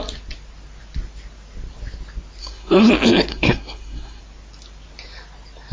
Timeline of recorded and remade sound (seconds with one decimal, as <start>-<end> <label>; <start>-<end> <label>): 0.0-2.4 recorded; 2.4-2.9 remade; 2.9-3.3 recorded; 3.3-4.2 remade; 4.2-5.7 recorded